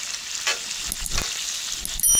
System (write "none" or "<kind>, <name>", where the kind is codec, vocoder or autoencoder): none